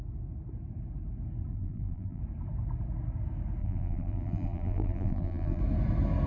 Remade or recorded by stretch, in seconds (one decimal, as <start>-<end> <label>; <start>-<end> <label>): 0.0-1.5 recorded; 1.5-2.2 remade; 2.2-3.6 recorded; 3.6-5.6 remade; 5.6-6.3 recorded